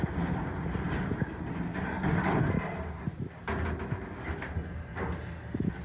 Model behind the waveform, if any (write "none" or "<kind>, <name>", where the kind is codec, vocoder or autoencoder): none